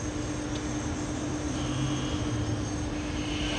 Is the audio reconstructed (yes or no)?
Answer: no